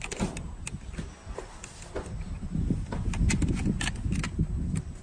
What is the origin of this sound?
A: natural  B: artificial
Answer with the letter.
A